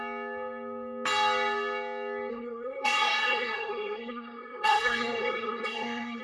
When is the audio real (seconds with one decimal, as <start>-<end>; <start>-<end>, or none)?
0.0-2.3